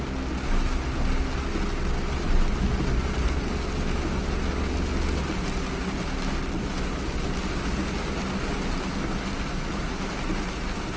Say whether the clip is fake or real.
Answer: real